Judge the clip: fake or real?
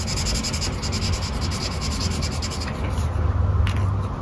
real